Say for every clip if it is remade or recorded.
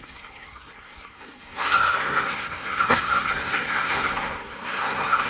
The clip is remade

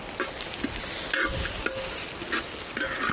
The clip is recorded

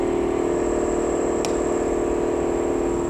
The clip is recorded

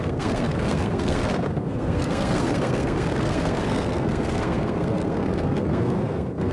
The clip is remade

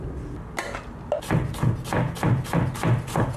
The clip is recorded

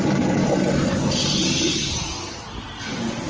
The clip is recorded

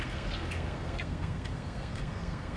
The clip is remade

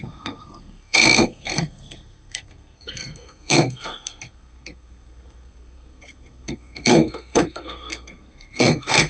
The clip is remade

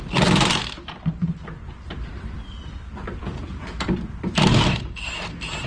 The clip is recorded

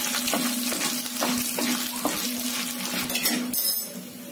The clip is recorded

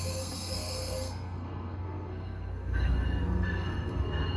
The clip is remade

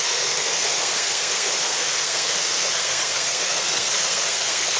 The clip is remade